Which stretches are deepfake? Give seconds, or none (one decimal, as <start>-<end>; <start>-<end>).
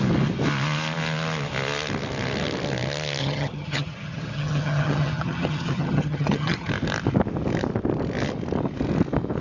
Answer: 3.2-6.7